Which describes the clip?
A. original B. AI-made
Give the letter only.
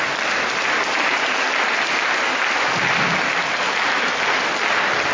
A